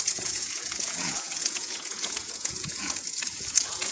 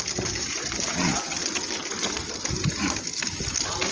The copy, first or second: first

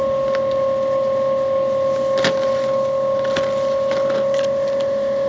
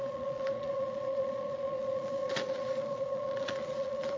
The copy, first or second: second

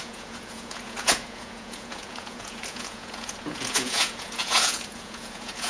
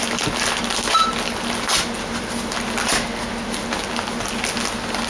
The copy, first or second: first